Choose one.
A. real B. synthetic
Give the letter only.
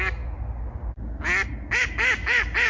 A